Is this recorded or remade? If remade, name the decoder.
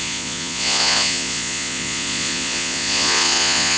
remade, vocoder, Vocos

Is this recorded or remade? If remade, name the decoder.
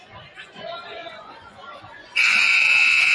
remade, vocoder, Vocos